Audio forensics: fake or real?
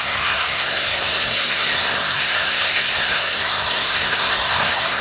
fake